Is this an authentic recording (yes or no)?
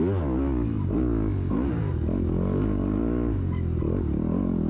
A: yes